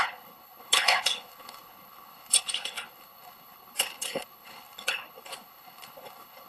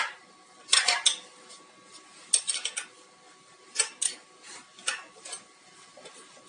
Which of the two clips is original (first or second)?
second